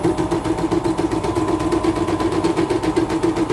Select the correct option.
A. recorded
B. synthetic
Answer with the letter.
A